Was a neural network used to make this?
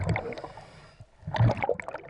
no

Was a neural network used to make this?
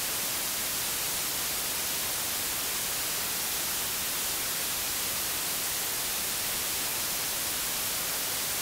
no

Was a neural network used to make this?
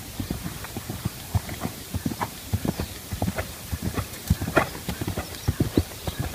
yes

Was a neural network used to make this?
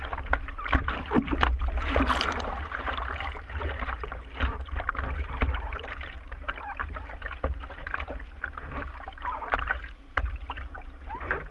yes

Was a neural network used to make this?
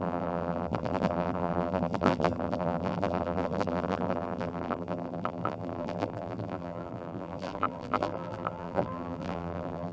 yes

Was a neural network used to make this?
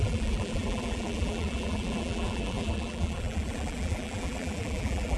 yes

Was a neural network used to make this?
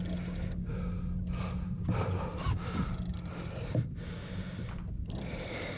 no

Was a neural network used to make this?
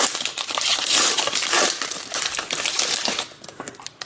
yes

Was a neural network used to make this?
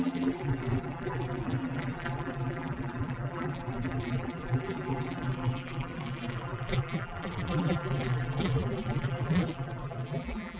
yes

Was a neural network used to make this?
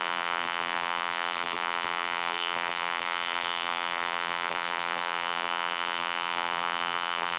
yes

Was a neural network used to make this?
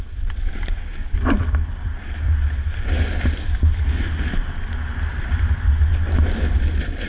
no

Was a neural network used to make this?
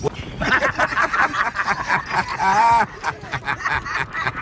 yes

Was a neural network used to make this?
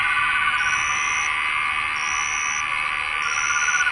no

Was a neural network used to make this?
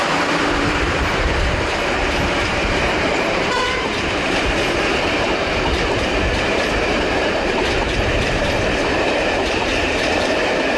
yes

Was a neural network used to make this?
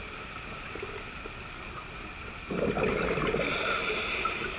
no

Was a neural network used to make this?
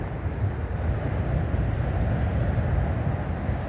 no